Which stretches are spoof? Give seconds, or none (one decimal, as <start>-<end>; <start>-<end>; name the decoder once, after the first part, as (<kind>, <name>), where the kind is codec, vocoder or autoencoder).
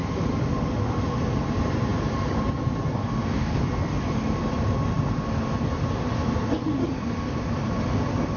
2.9-3.6 (codec, DAC)